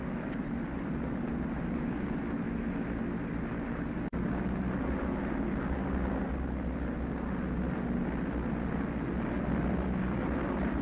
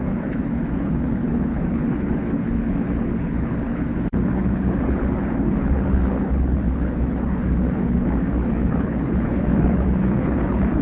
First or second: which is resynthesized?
second